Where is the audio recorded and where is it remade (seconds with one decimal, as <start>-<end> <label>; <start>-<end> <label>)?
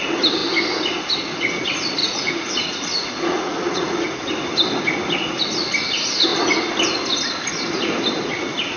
0.0-2.0 recorded; 2.0-4.2 remade; 4.2-8.8 recorded